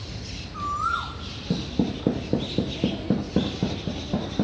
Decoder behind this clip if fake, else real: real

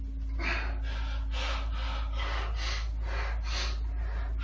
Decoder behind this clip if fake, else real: real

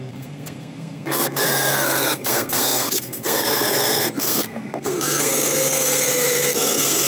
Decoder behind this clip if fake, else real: fake, codec, SNAC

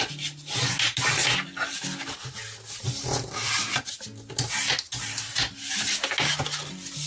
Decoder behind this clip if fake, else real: real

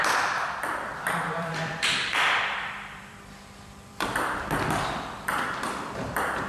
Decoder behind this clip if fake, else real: fake, vocoder, BigVGAN v2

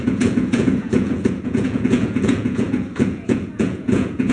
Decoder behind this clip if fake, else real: fake, vocoder, Vocos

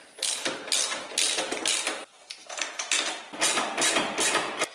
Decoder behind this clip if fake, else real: real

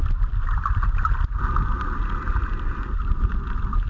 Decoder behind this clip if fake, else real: real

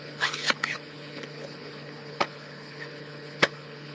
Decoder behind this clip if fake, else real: fake, codec, HILCodec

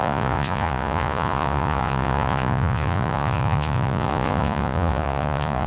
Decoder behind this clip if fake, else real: fake, vocoder, Vocos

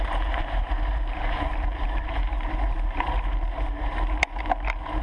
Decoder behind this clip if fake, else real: fake, vocoder, BigVGAN v2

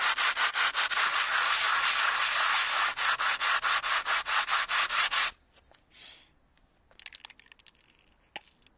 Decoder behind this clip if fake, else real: real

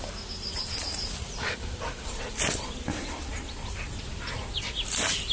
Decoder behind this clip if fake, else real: real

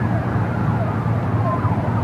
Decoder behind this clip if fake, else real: real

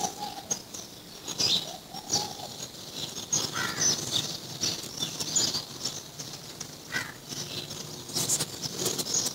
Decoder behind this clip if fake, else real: real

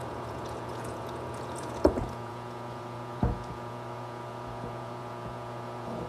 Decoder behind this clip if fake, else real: fake, vocoder, Vocos